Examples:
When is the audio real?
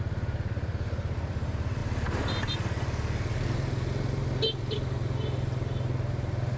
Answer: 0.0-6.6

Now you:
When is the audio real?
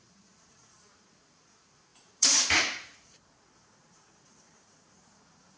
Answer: none